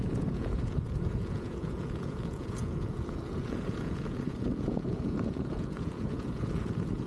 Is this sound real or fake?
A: fake